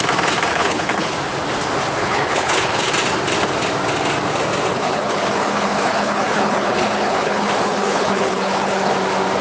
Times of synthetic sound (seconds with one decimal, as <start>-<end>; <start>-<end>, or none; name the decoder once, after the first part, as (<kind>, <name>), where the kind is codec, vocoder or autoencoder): 0.5-1.1 (codec, HILCodec); 2.0-2.9; 4.7-8.9